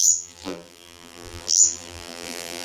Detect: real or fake fake